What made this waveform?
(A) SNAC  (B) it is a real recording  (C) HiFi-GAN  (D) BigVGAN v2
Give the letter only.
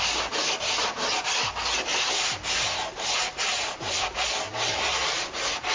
B